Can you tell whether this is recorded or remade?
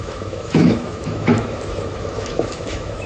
remade